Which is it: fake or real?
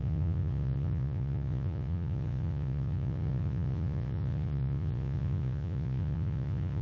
fake